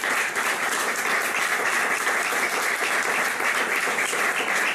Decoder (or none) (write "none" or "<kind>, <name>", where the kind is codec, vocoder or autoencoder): none